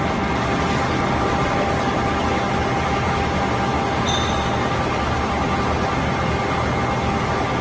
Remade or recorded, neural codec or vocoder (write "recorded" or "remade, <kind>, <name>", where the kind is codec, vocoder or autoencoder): recorded